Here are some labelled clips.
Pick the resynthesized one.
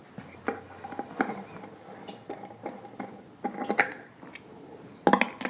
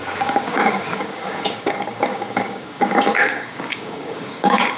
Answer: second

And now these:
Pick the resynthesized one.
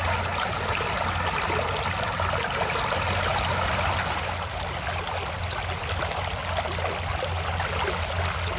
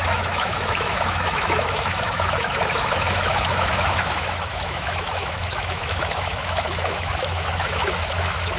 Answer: second